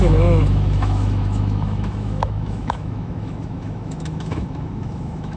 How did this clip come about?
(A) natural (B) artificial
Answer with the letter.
B